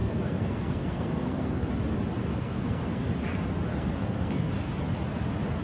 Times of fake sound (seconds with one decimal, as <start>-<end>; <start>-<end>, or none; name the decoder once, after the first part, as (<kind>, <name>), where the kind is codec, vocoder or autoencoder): 0.0-1.7 (codec, SNAC); 2.2-3.0; 3.7-4.5